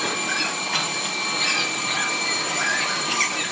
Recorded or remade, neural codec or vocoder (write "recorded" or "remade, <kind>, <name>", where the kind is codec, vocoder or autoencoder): recorded